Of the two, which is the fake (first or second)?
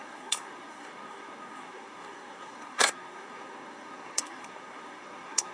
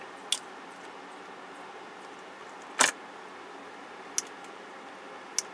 first